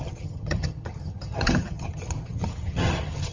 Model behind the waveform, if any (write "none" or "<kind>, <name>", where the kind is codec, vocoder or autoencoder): vocoder, HiFi-GAN